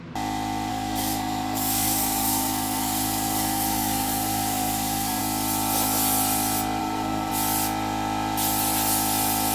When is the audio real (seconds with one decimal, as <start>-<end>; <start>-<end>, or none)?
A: 0.0-0.7; 5.2-6.8; 7.3-9.5